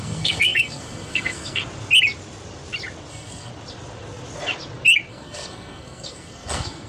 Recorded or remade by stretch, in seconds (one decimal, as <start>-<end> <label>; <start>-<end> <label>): 0.0-1.6 remade; 1.6-3.1 recorded; 3.1-3.5 remade; 3.5-5.1 recorded; 5.1-6.9 remade